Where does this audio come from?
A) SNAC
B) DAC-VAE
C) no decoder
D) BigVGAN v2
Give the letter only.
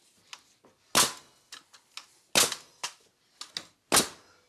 C